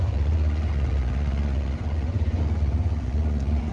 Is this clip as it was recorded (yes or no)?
no